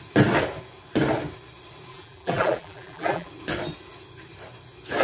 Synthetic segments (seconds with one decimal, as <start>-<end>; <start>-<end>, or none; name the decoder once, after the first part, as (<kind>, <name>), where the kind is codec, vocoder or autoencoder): 1.9-3.3 (vocoder, BigVGAN v2)